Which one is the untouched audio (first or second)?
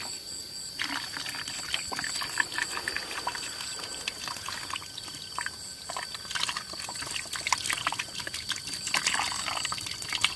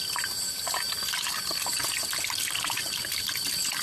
first